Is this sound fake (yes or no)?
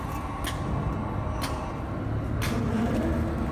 no